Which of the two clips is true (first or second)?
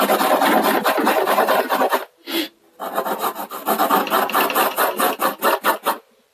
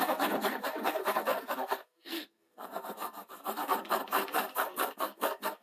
first